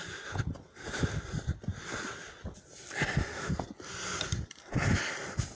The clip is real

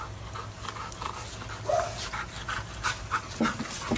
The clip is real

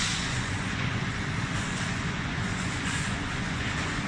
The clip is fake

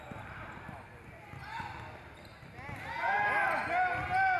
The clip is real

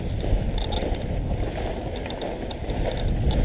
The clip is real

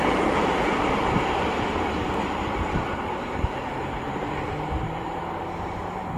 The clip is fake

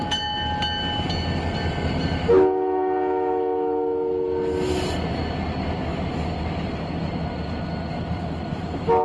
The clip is real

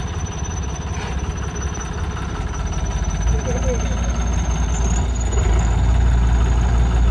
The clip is real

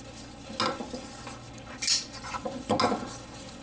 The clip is real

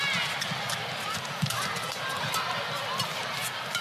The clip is real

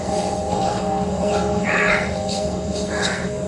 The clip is fake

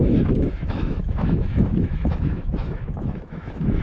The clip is fake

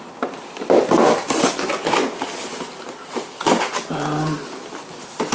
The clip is real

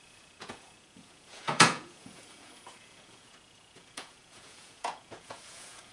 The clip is fake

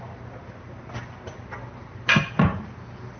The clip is real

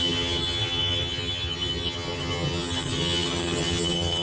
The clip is fake